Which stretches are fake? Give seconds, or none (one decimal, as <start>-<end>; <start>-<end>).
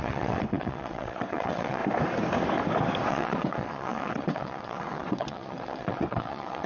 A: 0.0-1.8; 3.1-6.7